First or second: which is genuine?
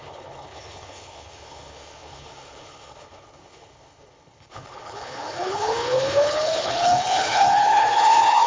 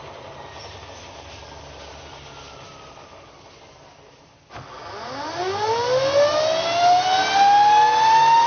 second